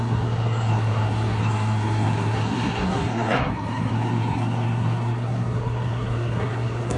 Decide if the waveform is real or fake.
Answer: fake